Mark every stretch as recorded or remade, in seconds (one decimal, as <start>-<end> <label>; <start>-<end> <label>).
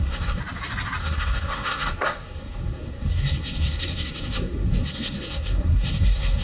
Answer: 0.0-0.4 remade; 0.4-1.0 recorded; 1.0-6.4 remade